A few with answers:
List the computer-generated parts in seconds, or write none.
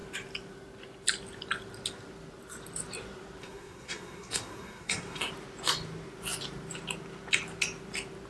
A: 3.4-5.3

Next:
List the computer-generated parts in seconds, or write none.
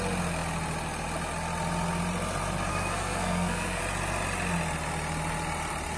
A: 2.7-3.8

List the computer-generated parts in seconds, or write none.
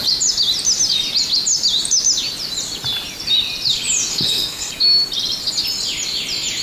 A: 4.1-4.7